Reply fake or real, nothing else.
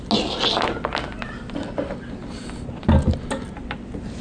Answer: real